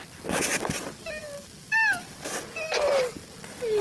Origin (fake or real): real